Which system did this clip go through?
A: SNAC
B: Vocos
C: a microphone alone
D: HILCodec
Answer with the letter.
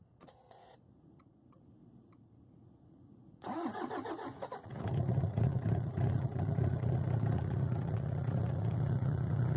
B